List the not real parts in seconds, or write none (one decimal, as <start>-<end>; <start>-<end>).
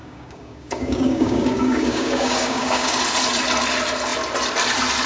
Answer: 0.0-3.0